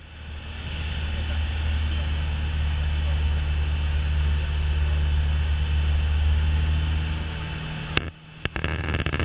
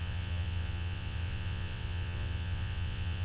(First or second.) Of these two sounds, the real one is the first